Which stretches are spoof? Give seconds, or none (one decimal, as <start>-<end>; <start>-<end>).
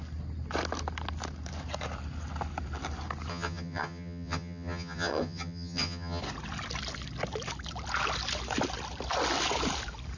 3.3-6.2